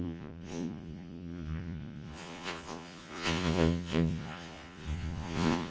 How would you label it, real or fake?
fake